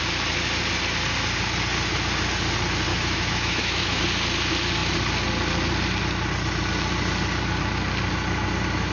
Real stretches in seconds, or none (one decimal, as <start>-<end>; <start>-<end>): 0.0-2.9; 4.0-8.9